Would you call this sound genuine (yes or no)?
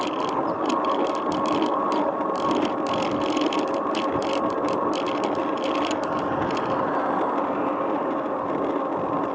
yes